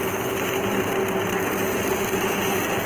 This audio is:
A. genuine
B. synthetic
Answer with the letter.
A